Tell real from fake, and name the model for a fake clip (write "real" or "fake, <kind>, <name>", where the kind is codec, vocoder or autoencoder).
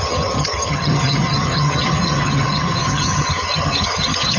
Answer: fake, vocoder, HiFi-GAN